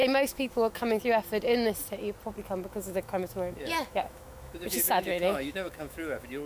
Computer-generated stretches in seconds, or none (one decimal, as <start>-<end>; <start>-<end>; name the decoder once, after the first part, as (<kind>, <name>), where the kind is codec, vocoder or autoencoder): 0.0-1.0 (autoencoder, DAC-VAE); 2.7-6.5